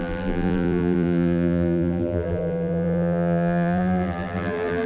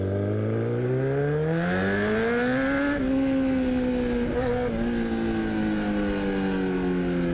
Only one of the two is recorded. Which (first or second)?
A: second